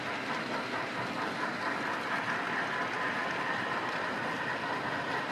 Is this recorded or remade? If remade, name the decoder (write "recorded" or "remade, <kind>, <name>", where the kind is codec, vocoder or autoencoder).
recorded